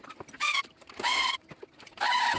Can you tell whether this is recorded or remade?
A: recorded